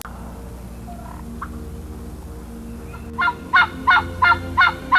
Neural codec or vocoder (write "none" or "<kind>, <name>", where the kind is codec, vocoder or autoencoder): none